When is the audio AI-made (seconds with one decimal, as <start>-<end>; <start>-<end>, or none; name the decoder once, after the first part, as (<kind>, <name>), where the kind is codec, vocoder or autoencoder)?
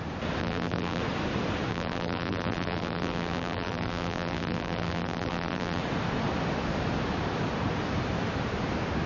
0.4-1.0 (vocoder, BigVGAN v2); 1.7-5.8